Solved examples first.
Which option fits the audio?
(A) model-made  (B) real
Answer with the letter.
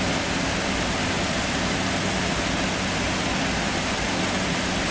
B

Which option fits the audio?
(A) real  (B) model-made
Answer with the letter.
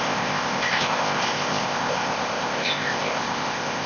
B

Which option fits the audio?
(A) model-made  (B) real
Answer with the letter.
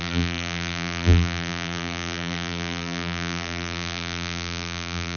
A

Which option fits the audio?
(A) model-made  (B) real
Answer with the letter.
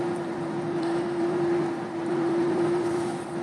A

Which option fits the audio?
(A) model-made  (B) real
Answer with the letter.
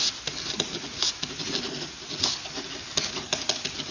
B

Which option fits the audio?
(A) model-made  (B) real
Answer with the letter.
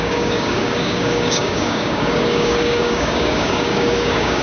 A